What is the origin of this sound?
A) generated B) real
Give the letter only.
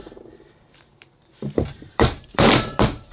A